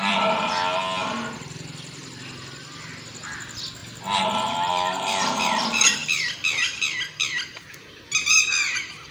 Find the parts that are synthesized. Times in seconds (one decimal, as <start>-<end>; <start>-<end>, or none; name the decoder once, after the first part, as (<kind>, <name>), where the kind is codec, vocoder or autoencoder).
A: 0.0-6.0 (vocoder, BigVGAN v2); 8.4-9.1